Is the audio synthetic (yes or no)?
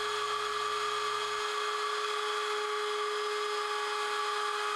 no